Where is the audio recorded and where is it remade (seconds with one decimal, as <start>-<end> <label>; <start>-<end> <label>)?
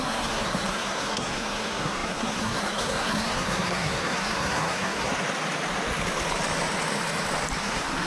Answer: 0.0-5.1 remade; 5.1-7.6 recorded; 7.6-8.1 remade